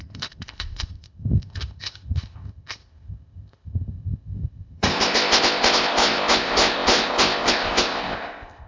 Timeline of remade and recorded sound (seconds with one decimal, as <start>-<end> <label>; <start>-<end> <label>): 0.0-8.7 remade